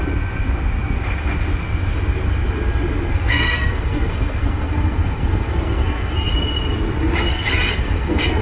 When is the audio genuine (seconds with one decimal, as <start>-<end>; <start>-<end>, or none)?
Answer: 0.0-3.1; 6.3-7.3